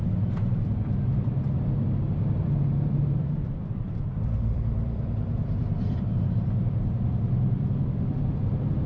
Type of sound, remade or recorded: remade